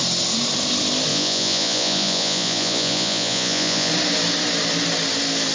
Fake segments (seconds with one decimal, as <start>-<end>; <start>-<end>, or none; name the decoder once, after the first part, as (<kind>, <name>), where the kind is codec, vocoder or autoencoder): 1.1-3.9 (vocoder, Vocos)